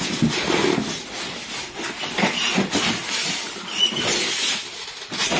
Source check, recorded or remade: recorded